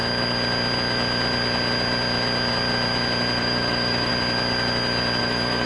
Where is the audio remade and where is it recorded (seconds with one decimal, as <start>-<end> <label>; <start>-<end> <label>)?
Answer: 0.0-3.4 recorded; 3.4-4.1 remade; 4.1-5.2 recorded; 5.2-5.7 remade